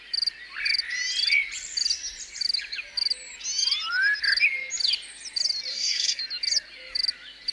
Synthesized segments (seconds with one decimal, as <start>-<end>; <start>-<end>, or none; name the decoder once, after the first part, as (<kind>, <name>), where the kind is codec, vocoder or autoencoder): 5.7-6.2 (codec, SNAC)